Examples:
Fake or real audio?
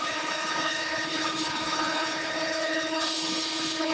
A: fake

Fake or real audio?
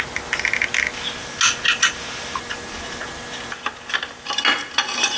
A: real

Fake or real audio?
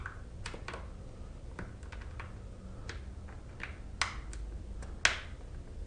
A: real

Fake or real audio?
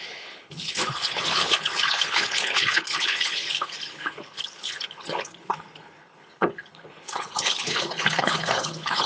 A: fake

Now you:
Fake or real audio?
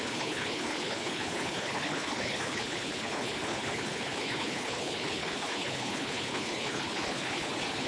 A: fake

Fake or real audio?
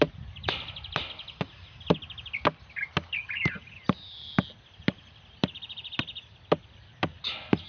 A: real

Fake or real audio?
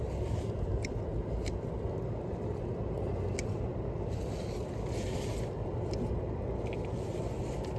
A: real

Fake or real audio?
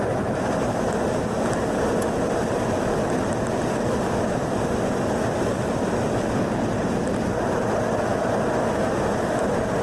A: real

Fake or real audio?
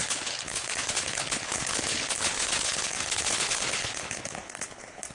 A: fake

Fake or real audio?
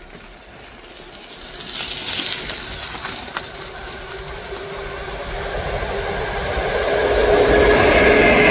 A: real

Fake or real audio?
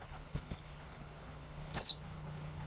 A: fake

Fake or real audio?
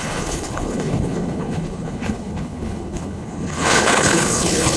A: fake